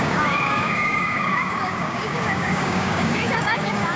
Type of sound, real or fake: fake